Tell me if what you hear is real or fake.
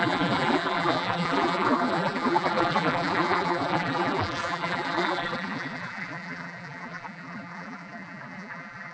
fake